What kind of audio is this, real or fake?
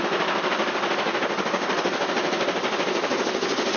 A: real